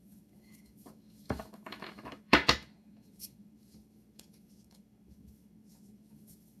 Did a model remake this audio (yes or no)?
yes